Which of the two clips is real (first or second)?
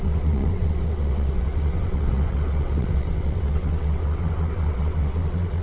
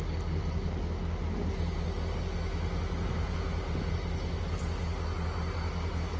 second